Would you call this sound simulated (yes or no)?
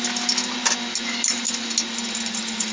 no